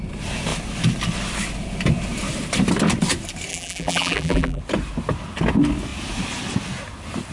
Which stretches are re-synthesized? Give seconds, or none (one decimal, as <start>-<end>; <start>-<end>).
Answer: 3.5-4.6